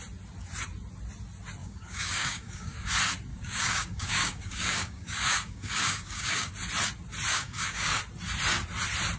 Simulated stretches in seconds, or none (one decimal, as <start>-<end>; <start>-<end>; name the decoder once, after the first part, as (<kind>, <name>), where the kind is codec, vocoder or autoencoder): 1.6-2.9 (codec, DAC); 3.3-6.5; 7.3-8.0